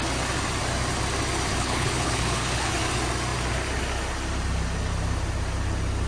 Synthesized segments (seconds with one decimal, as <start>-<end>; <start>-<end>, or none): 1.5-2.7